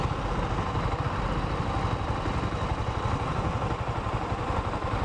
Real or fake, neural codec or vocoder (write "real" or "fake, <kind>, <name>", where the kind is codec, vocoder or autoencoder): real